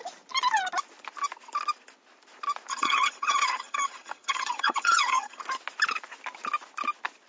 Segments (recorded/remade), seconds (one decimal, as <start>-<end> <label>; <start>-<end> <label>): 0.0-2.7 recorded; 2.7-5.4 remade; 5.4-7.3 recorded